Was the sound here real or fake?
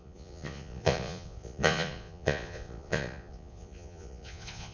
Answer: fake